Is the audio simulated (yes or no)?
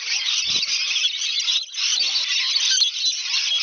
no